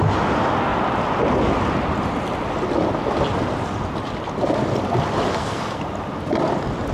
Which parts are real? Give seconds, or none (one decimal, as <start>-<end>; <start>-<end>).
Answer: 0.0-5.3; 5.8-6.9